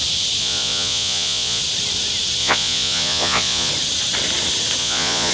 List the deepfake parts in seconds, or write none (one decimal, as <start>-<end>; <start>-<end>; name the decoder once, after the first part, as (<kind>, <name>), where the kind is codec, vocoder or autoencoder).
0.4-1.6 (vocoder, Vocos); 2.4-3.7; 4.8-5.3